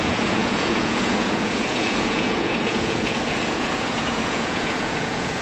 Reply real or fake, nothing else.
fake